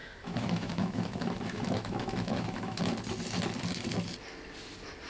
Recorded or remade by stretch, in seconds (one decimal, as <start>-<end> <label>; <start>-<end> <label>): 0.0-2.8 remade; 2.8-5.1 recorded